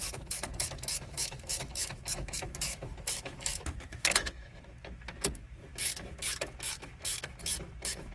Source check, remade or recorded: remade